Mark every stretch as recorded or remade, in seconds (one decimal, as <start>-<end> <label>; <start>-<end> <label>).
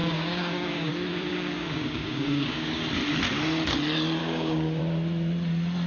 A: 0.0-0.9 remade; 0.9-1.3 recorded; 1.3-2.8 remade; 2.8-4.2 recorded; 4.2-4.8 remade; 4.8-5.9 recorded